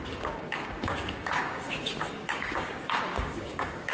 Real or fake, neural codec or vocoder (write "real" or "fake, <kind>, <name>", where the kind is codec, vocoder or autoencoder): fake, codec, DAC